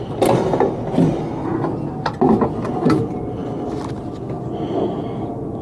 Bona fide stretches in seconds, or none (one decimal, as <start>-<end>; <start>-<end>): 0.0-5.6